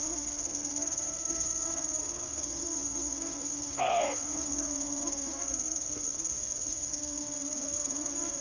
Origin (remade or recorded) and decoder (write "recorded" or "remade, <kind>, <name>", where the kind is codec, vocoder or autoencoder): remade, codec, SNAC